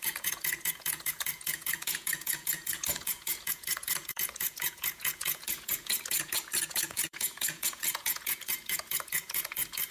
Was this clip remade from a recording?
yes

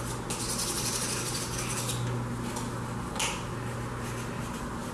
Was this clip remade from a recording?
no